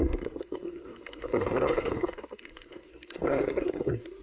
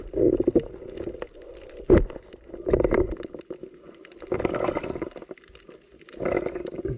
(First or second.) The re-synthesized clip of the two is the first